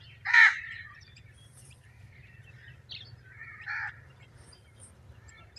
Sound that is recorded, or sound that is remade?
remade